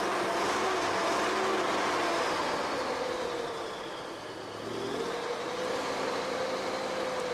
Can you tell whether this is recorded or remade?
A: recorded